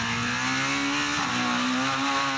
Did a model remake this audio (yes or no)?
no